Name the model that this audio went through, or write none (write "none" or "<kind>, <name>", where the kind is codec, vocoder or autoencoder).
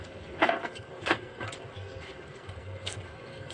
codec, SNAC